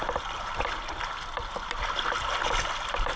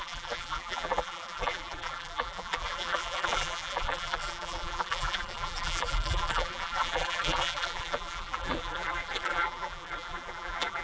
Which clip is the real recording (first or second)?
first